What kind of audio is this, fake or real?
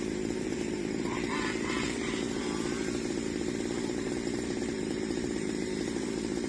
fake